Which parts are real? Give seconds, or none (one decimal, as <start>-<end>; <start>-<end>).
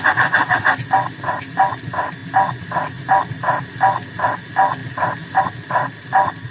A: 0.0-6.5